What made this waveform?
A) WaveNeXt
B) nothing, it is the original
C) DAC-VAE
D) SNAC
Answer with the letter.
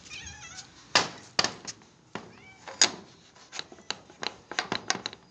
B